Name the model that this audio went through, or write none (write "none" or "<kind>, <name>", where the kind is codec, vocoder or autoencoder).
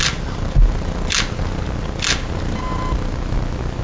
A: none